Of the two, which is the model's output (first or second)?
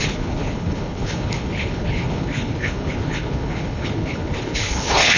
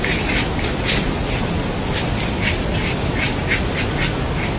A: first